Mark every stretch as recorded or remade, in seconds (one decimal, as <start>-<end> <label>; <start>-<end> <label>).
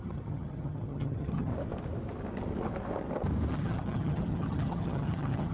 0.0-1.5 remade; 1.5-3.5 recorded; 3.5-5.5 remade